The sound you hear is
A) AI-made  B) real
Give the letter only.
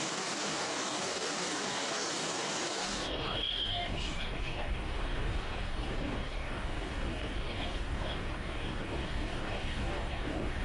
A